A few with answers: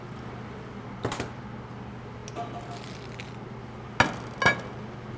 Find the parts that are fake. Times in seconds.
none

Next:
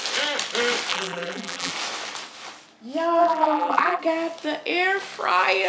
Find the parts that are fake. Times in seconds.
0.9-1.7 (vocoder, BigVGAN v2); 3.2-4.0

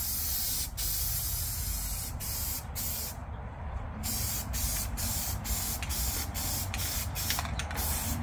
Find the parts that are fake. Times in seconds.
3.2-7.1 (vocoder, BigVGAN v2)